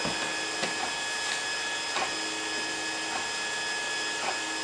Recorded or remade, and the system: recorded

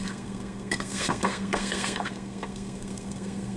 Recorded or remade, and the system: remade, codec, SNAC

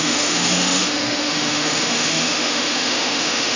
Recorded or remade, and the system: remade, autoencoder, DAC-VAE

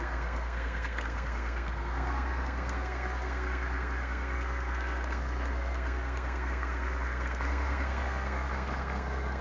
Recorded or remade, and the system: remade, codec, SNAC